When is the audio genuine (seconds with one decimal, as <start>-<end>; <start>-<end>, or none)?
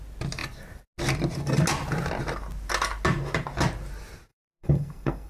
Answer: 0.0-4.3